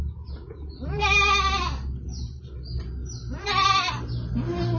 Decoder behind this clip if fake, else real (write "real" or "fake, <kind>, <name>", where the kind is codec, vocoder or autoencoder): real